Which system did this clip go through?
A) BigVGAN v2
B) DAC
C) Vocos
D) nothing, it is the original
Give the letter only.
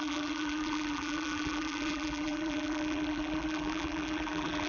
A